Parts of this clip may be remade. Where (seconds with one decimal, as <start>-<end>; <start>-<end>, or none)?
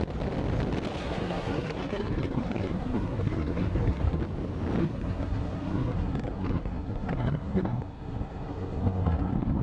1.0-4.2; 4.8-9.6